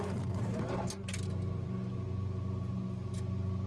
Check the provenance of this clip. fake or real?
real